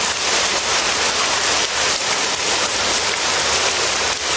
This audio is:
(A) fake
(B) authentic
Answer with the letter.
B